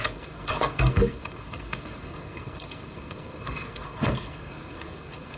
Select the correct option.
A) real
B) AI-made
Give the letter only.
B